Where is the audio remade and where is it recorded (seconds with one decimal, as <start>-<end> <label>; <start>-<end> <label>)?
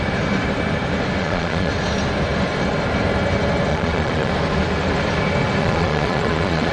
0.0-1.2 recorded; 1.2-1.7 remade; 1.7-3.7 recorded; 3.7-4.3 remade; 4.3-5.6 recorded; 5.6-6.7 remade